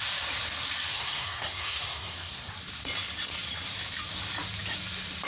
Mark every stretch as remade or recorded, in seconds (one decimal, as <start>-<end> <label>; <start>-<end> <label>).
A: 0.0-0.9 recorded; 0.9-2.5 remade; 2.5-5.3 recorded